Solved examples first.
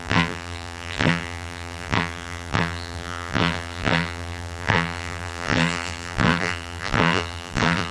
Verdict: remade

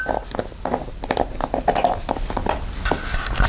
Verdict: recorded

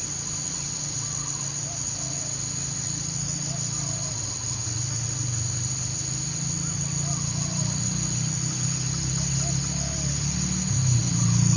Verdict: recorded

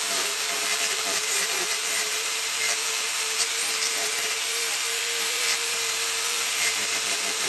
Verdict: remade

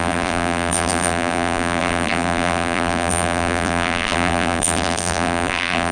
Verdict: remade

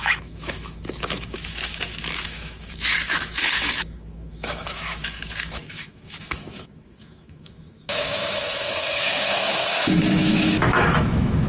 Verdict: remade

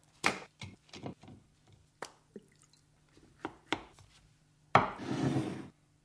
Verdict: recorded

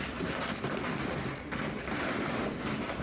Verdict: remade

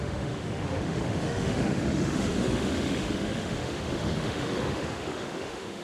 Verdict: remade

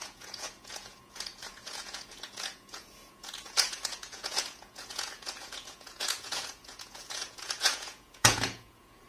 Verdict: remade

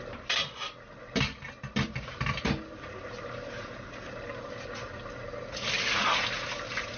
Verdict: recorded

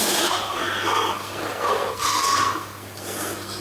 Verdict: remade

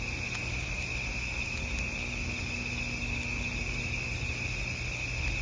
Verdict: recorded